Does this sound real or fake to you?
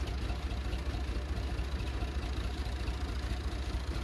real